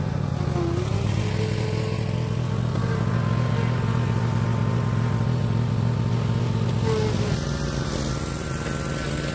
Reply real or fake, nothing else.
real